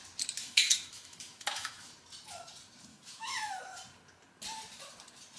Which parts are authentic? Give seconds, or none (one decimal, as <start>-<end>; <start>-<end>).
0.0-0.4; 1.9-2.9; 3.6-5.4